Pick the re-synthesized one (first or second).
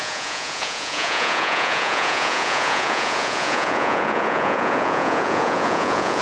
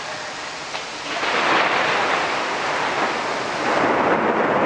first